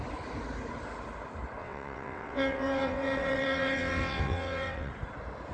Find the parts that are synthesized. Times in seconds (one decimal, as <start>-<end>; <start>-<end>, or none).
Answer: 1.6-4.9